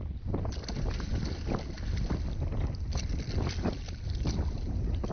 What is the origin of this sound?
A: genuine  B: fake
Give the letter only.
A